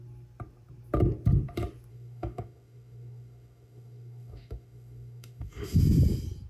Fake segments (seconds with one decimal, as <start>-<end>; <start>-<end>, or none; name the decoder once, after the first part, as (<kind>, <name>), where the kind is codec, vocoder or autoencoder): 1.9-5.8 (autoencoder, DAC-VAE)